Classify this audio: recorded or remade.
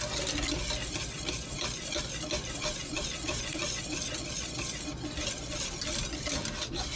recorded